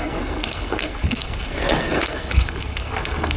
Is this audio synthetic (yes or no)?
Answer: yes